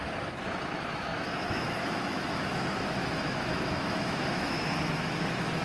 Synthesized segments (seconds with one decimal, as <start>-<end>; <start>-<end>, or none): 0.0-5.6